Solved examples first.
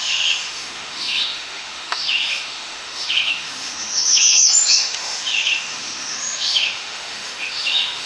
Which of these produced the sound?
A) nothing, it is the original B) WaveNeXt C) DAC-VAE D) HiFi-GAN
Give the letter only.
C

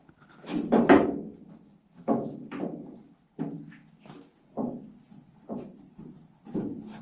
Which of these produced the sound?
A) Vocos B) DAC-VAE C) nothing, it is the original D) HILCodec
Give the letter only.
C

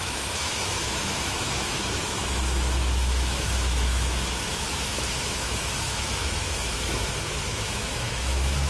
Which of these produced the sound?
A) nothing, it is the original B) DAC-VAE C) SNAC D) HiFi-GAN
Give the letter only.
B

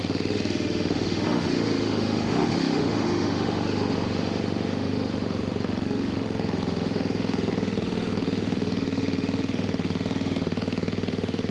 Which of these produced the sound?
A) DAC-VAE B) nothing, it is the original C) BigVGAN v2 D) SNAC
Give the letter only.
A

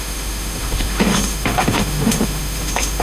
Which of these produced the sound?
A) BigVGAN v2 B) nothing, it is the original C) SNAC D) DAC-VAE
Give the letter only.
D